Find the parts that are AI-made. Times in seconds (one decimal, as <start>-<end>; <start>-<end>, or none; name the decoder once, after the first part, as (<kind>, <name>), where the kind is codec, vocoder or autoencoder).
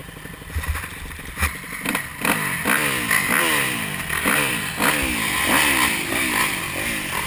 none